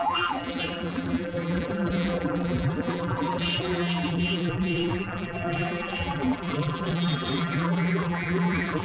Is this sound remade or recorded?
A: remade